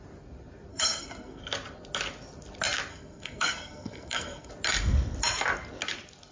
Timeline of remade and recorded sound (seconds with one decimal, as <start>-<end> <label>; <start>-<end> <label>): 0.0-0.7 recorded; 0.7-1.4 remade; 1.4-2.9 recorded; 2.9-4.5 remade; 4.5-6.3 recorded